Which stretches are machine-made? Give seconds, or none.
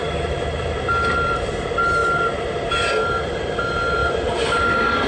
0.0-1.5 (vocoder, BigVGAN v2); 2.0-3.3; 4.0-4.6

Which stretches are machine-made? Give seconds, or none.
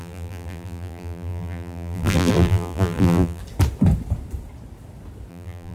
0.0-3.4 (vocoder, BigVGAN v2); 5.3-5.7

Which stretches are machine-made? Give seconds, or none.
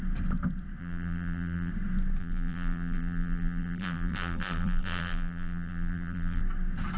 0.8-1.7 (vocoder, BigVGAN v2); 2.2-6.4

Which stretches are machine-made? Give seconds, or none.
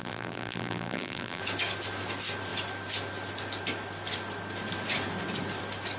0.0-1.4 (vocoder, BigVGAN v2)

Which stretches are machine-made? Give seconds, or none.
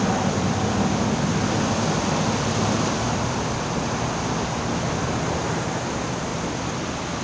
none